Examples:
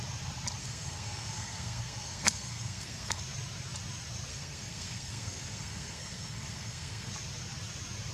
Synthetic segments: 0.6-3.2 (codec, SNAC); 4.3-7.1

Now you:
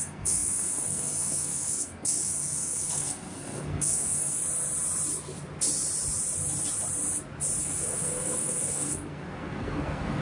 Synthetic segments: 0.0-4.4 (codec, SNAC); 7.6-10.2

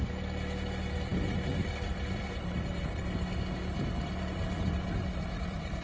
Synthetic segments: none

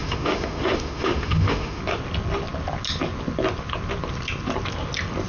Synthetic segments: 0.0-1.8 (autoencoder, DAC-VAE)

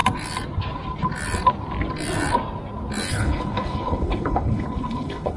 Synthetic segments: 3.1-5.4 (codec, HILCodec)